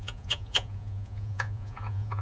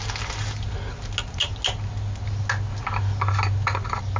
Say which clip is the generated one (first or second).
first